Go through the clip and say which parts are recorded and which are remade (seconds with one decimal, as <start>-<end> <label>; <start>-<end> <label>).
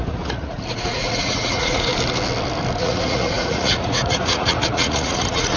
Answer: 0.0-1.9 remade; 1.9-2.8 recorded; 2.8-5.6 remade